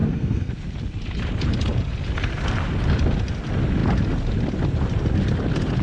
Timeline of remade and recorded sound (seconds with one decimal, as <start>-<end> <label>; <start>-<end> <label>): 0.0-0.5 remade; 0.5-5.8 recorded